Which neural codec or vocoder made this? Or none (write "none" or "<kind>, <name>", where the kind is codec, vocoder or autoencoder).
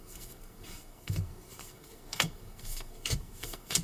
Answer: codec, SNAC